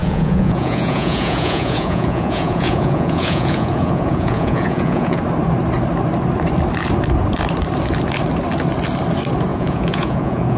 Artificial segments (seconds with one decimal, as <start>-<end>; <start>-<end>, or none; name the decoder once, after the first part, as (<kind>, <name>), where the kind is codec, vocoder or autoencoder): 0.0-5.2 (vocoder, Vocos); 9.5-10.6